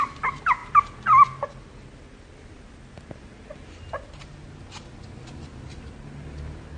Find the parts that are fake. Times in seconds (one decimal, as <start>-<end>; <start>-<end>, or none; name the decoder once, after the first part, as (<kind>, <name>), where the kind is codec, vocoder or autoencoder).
none